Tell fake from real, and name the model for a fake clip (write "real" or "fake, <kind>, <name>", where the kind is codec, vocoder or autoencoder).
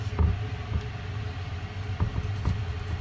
real